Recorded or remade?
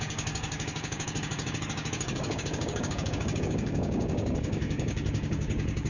remade